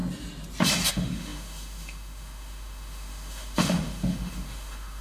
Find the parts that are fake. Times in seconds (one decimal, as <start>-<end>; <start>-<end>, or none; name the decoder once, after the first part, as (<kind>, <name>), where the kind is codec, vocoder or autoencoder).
0.9-5.0 (autoencoder, DAC-VAE)